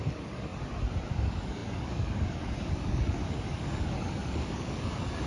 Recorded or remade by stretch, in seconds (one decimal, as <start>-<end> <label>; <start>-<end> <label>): 0.0-0.5 remade; 0.5-1.1 recorded; 1.1-5.3 remade

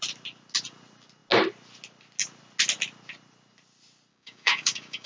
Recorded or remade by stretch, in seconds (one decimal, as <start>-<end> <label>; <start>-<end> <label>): 0.0-4.1 recorded; 4.1-5.1 remade